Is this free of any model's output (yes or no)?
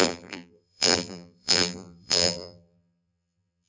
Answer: no